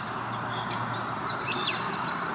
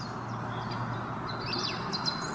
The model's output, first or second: first